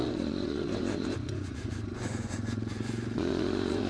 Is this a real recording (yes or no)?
no